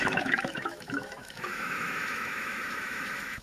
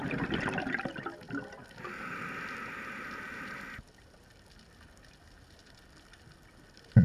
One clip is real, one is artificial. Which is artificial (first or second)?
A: first